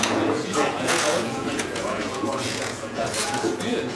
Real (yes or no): no